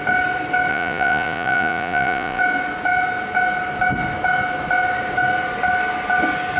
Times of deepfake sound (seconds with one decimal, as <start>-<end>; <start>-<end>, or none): 0.7-2.4